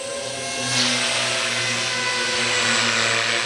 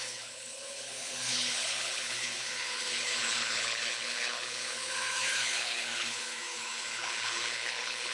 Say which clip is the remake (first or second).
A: second